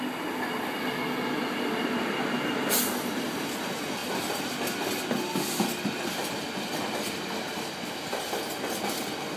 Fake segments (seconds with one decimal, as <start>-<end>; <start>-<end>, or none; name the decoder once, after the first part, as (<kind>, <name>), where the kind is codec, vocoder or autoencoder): none

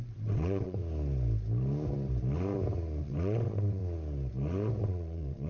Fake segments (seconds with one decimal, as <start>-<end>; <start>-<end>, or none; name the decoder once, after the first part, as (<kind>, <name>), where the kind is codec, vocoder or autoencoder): 0.0-0.8 (vocoder, WaveNeXt); 3.0-3.8; 4.8-5.5

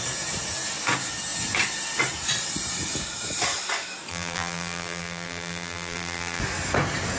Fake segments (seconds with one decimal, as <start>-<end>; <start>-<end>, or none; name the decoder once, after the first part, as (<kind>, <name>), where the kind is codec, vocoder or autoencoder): 4.1-6.4 (vocoder, BigVGAN v2)